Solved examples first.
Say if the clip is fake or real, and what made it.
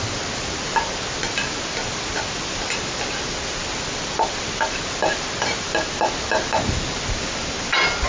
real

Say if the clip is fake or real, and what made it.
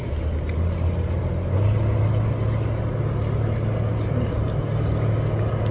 real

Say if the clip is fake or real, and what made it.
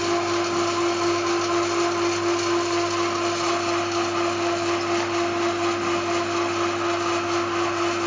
real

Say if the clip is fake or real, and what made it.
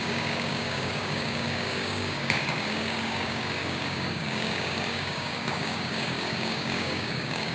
fake, codec, DAC